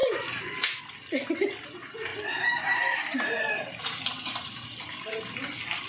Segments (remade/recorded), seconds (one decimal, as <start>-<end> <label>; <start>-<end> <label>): 0.0-0.8 remade; 0.8-2.1 recorded; 2.1-4.0 remade; 4.0-5.9 recorded